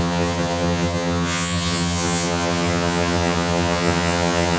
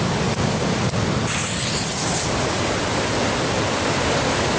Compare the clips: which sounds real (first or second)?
second